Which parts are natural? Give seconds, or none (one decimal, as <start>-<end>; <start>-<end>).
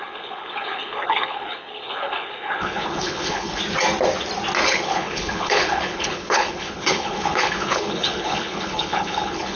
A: 3.6-4.6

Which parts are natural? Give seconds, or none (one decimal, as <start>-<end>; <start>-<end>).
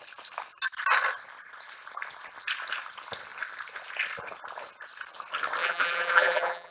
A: 0.0-5.6